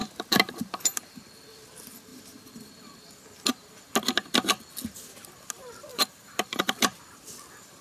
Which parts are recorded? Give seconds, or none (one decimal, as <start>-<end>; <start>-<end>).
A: 0.8-5.9; 6.8-7.8